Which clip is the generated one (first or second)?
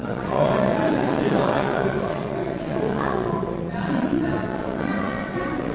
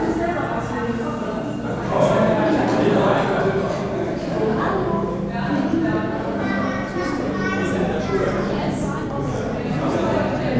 first